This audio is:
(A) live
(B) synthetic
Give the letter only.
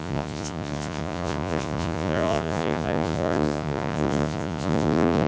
B